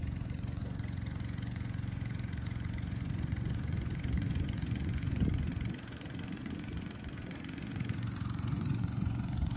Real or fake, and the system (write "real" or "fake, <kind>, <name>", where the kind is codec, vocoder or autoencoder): fake, vocoder, Vocos